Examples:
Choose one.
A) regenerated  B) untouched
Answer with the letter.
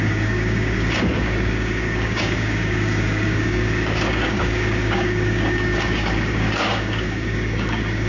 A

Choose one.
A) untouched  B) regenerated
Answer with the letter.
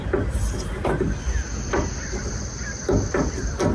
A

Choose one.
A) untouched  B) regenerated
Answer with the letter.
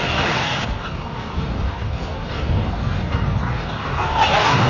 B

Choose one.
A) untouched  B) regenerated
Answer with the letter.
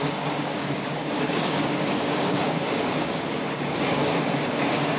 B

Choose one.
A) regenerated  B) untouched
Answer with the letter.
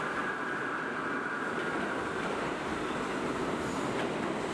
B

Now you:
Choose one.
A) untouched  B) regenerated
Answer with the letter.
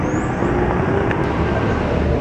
A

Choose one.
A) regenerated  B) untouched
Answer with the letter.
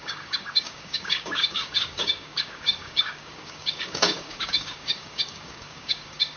A